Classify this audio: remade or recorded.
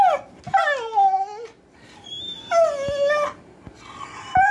recorded